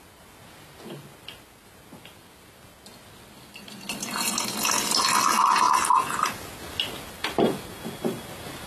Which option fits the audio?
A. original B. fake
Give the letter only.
A